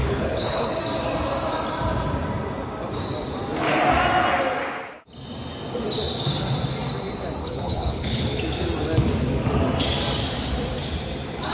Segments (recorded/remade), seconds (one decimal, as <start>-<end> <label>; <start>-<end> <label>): 0.0-0.8 remade; 0.8-7.4 recorded; 7.4-8.4 remade; 8.4-11.5 recorded